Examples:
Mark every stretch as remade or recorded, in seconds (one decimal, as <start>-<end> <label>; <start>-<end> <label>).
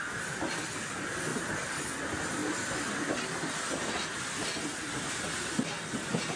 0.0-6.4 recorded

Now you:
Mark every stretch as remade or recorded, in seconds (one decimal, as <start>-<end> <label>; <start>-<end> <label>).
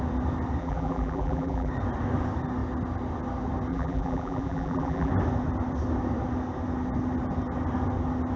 0.0-0.6 recorded; 0.6-1.7 remade; 1.7-3.7 recorded; 3.7-5.1 remade; 5.1-8.4 recorded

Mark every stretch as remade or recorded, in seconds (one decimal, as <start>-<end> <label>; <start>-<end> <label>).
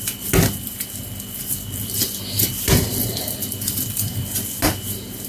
0.0-1.4 recorded; 1.4-4.6 remade; 4.6-5.3 recorded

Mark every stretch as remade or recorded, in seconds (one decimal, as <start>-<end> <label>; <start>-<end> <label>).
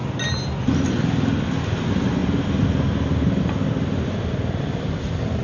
0.0-5.4 recorded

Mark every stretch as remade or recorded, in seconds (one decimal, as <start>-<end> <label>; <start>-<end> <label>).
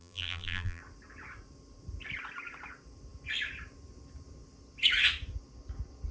0.0-0.8 remade; 0.8-6.1 recorded